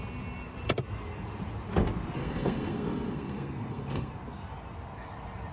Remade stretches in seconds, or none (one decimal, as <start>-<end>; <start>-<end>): 2.2-4.1